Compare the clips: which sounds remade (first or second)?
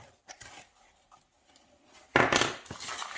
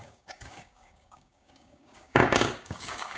second